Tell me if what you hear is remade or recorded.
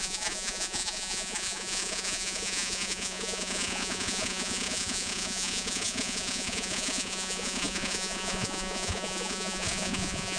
remade